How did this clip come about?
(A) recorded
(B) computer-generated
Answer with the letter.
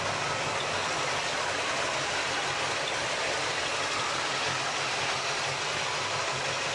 A